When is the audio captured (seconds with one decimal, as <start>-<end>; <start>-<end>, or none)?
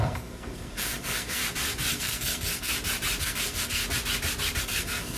1.4-1.9; 2.7-3.2; 3.8-4.6